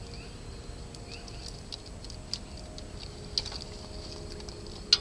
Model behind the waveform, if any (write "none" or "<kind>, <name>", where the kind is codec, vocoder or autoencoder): none